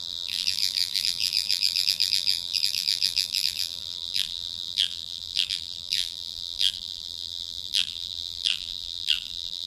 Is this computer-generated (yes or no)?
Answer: yes